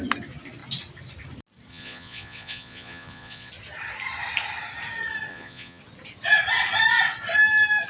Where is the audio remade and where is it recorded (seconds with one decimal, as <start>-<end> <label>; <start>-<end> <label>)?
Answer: 0.0-1.7 recorded; 1.7-3.5 remade; 3.5-5.3 recorded; 5.3-5.8 remade; 5.8-7.9 recorded